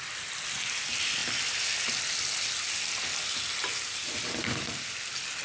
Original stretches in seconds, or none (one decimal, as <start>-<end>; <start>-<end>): 0.0-5.4